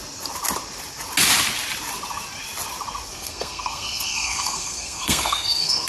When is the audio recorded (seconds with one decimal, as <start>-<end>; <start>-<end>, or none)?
0.0-3.1